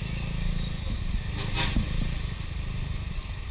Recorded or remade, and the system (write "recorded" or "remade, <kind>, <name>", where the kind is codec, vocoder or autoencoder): recorded